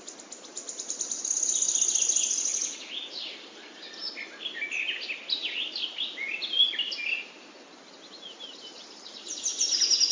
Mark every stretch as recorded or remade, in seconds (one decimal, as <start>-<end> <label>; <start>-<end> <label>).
0.0-10.1 recorded